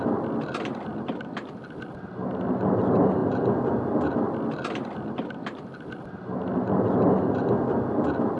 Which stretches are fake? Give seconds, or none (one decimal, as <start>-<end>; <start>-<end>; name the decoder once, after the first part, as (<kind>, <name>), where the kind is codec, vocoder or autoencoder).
none